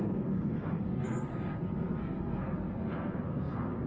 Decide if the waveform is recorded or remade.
remade